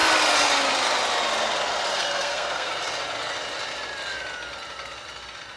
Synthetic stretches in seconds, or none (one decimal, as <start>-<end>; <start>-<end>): 1.9-2.7